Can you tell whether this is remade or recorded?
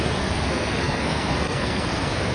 remade